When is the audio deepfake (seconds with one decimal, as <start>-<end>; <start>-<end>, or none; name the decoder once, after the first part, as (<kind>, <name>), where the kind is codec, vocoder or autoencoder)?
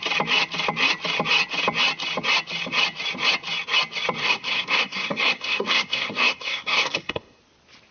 4.2-7.4 (codec, SNAC)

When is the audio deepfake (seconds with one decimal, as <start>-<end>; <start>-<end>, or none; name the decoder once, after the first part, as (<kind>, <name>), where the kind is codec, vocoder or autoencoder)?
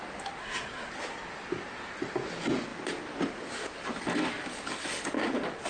0.4-0.9 (codec, SNAC)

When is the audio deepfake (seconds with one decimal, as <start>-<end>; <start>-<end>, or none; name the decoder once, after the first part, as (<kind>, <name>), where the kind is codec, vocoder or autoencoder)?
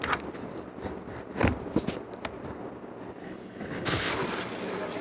3.2-4.1 (codec, HILCodec)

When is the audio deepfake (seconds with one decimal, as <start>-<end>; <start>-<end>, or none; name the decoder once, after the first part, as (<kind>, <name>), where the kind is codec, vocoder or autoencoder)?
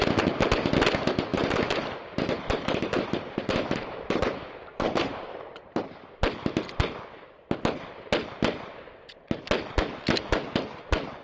1.3-6.1 (vocoder, BigVGAN v2)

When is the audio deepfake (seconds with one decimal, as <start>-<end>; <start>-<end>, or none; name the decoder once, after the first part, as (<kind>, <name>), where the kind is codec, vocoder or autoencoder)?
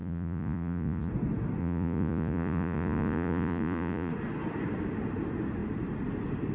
0.0-1.1 (vocoder, Vocos); 1.6-4.1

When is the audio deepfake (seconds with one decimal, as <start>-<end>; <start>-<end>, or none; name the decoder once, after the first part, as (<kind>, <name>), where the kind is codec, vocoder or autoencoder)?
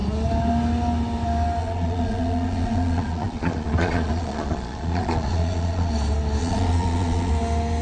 1.6-5.9 (vocoder, Vocos); 6.4-7.3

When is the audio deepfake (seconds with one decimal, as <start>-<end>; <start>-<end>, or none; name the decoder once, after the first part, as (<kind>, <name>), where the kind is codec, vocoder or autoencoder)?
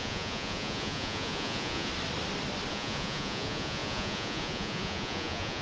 0.0-1.9 (vocoder, Vocos); 2.7-5.6